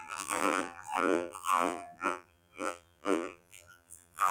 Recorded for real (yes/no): no